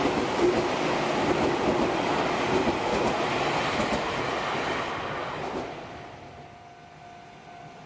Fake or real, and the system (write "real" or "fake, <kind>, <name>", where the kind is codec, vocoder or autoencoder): real